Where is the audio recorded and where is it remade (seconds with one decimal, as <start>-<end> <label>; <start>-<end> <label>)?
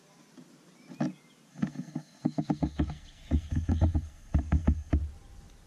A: 0.0-1.5 recorded; 1.5-4.9 remade; 4.9-5.7 recorded